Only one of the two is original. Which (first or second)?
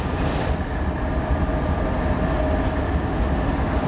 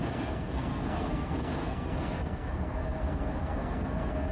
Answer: first